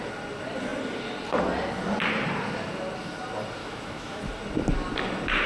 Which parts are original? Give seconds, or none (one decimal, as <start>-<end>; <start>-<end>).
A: 0.0-3.6; 4.2-5.5